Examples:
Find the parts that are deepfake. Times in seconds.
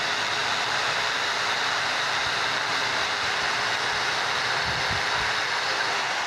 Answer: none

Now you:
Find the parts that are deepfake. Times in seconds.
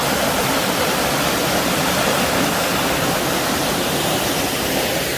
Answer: none